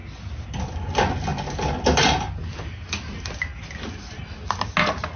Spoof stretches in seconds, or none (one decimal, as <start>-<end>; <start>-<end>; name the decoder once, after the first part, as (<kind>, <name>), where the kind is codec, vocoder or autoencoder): none